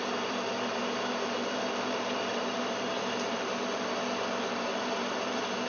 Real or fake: fake